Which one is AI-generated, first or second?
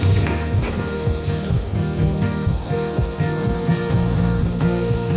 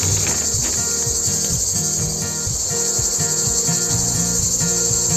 first